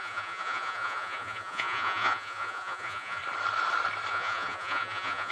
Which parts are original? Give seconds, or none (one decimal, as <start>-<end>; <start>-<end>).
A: 3.2-4.1